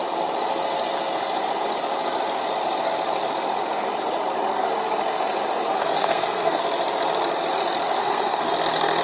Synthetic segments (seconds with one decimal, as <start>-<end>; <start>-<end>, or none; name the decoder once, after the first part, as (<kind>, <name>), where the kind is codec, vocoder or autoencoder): 5.7-6.6 (codec, SNAC); 8.0-8.5